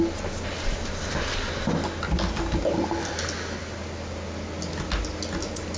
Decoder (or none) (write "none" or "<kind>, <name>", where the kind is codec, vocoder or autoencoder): none